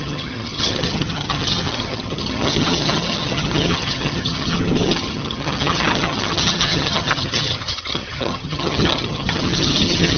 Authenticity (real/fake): fake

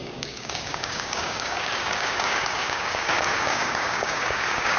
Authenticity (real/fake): fake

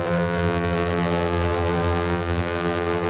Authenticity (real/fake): fake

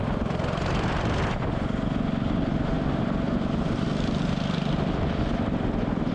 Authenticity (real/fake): real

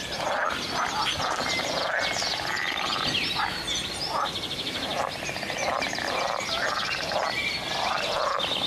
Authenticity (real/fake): real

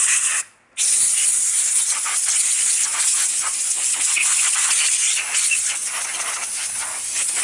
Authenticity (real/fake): real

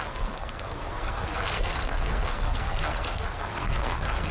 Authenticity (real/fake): fake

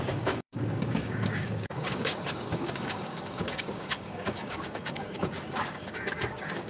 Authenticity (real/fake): fake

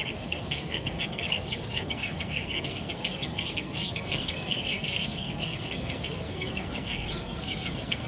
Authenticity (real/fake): fake